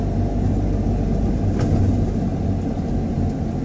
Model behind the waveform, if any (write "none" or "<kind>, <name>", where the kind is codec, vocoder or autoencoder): none